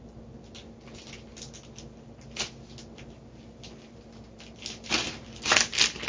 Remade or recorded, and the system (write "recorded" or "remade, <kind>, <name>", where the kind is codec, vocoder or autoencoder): recorded